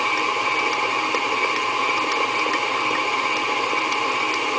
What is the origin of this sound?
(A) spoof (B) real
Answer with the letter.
B